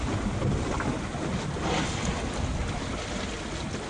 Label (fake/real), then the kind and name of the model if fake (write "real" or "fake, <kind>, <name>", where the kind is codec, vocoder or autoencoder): real